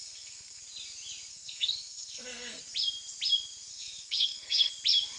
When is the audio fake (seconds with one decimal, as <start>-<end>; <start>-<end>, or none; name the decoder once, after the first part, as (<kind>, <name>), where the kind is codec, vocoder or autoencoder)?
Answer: 0.0-0.6 (codec, SNAC); 1.3-2.6; 3.7-4.7